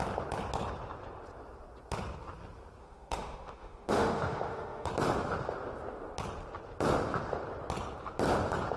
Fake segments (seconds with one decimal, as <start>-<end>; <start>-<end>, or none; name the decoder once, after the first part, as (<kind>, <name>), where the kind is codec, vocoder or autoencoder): 2.8-4.9 (autoencoder, DAC-VAE)